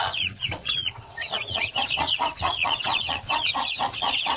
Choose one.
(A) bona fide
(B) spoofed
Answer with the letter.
B